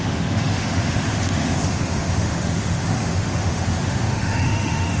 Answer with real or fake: fake